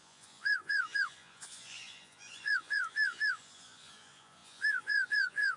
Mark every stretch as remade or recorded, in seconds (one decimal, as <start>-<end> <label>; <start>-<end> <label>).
0.0-5.6 remade